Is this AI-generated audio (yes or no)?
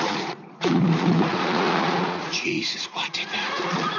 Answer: yes